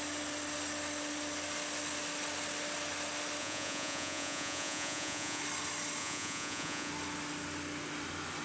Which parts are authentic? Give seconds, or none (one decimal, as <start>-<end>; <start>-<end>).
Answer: 0.0-3.4; 5.4-6.0; 6.9-8.4